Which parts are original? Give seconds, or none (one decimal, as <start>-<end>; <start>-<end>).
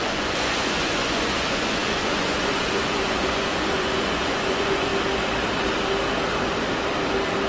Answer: 4.9-7.5